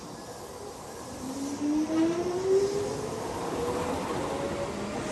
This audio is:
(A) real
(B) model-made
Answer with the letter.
A